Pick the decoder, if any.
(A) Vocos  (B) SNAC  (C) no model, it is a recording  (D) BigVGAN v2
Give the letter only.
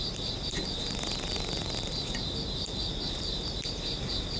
D